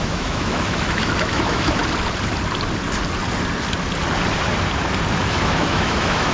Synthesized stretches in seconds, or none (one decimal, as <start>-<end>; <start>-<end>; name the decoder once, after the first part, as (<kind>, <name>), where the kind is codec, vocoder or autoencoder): 0.0-1.8 (autoencoder, DAC-VAE); 5.2-6.3